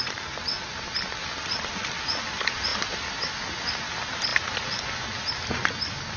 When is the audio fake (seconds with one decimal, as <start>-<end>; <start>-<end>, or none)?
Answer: 2.7-3.3